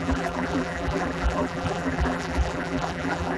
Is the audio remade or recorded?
remade